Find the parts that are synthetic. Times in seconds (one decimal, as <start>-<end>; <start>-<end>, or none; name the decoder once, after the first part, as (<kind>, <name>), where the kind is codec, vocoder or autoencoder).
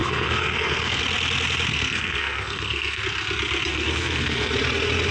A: 0.0-1.0 (codec, SNAC); 1.7-3.0; 3.7-4.5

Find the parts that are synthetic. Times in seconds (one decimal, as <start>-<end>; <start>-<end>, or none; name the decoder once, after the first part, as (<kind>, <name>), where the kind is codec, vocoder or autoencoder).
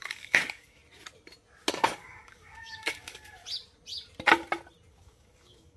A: 0.0-0.8 (codec, DAC); 1.7-3.4; 4.9-5.8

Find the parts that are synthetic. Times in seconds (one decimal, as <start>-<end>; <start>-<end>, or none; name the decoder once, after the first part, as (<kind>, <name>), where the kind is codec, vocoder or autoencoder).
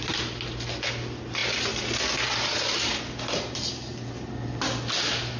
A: none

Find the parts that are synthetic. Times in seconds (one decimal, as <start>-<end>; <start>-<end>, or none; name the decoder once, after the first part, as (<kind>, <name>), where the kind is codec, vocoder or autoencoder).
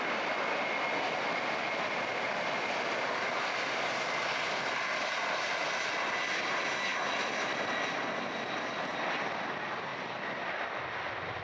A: 9.9-10.7 (vocoder, BigVGAN v2)